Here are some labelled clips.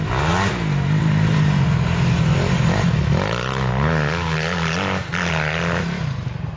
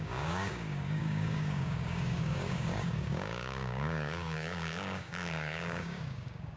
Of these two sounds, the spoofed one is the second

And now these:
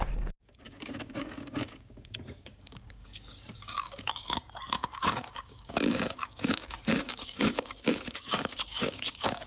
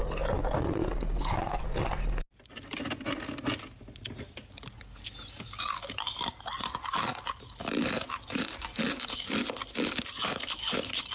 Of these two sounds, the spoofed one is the first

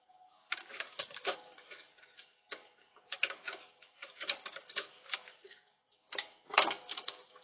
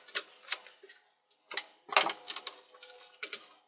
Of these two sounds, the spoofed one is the first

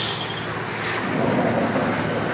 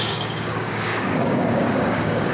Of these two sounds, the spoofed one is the second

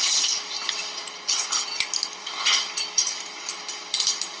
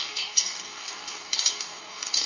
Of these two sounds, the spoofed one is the second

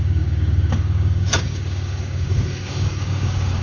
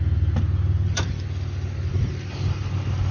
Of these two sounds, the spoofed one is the first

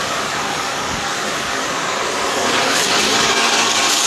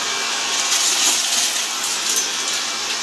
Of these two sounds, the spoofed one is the first